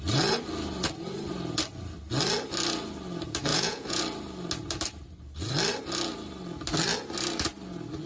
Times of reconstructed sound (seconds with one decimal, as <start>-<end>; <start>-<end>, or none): 3.5-4.0